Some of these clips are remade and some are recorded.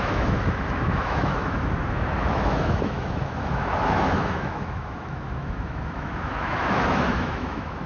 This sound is remade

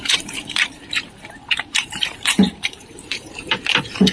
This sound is remade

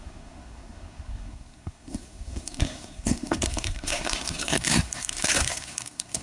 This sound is remade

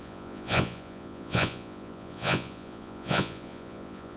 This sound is remade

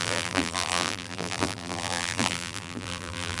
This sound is remade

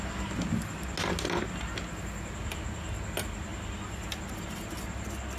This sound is recorded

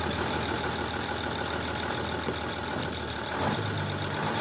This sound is recorded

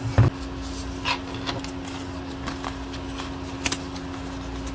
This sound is recorded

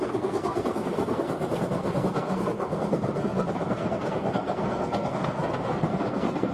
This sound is remade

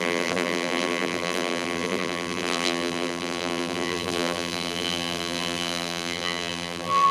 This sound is remade